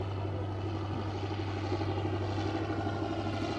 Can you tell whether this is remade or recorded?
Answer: recorded